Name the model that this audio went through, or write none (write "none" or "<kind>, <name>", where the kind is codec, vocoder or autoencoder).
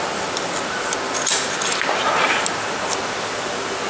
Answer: none